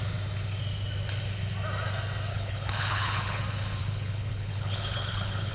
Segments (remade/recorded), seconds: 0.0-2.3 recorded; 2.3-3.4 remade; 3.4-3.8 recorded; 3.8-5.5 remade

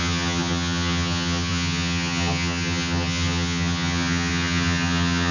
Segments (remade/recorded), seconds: 0.0-5.3 remade

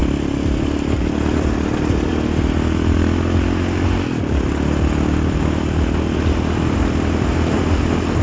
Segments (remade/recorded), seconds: 0.0-8.2 recorded

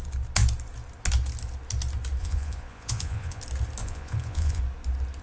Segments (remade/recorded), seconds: 0.0-2.2 recorded; 2.2-3.4 remade; 3.4-3.8 recorded; 3.8-4.6 remade; 4.6-5.2 recorded

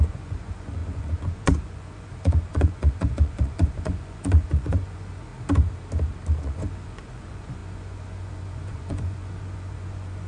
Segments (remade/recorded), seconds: 0.0-5.3 remade; 5.3-6.4 recorded; 6.4-10.3 remade